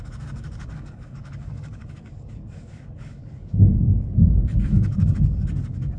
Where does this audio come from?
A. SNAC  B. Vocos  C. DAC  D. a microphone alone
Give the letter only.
C